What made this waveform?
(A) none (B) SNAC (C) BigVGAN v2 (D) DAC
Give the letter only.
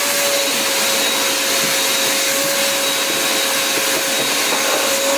A